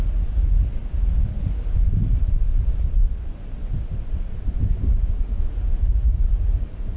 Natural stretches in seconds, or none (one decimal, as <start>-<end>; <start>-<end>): 0.8-1.4; 1.8-5.3